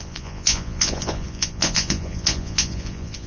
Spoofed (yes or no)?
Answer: yes